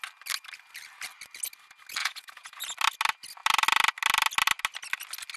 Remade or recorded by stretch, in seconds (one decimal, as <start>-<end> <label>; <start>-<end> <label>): 0.0-2.0 recorded; 2.0-2.6 remade; 2.6-5.4 recorded